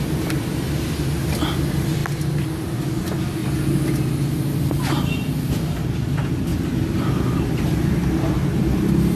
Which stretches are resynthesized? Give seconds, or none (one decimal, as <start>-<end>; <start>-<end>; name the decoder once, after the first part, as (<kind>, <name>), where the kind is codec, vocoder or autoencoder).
0.0-2.0 (vocoder, BigVGAN v2); 2.8-3.4; 4.3-8.0; 8.5-9.2